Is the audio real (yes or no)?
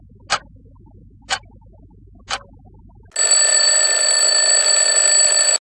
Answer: yes